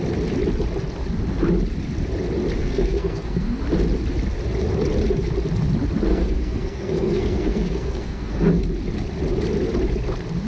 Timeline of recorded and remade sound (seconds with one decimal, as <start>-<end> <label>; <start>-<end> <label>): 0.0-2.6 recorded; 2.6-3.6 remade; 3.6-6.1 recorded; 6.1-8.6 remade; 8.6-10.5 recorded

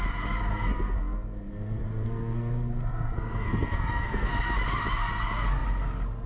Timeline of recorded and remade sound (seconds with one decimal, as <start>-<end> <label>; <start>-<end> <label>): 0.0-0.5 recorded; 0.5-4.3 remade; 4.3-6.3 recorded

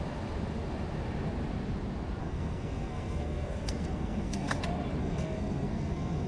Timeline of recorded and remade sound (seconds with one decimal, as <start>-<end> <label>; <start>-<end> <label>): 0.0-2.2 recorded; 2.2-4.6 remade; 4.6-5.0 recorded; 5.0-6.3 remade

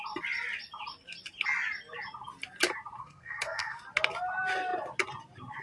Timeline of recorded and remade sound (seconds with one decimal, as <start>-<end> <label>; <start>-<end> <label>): 0.0-3.0 recorded; 3.0-3.8 remade; 3.8-5.6 recorded

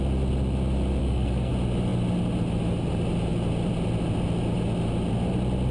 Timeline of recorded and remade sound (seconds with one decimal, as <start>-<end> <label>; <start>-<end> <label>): 0.0-1.0 recorded; 1.0-1.5 remade; 1.5-5.7 recorded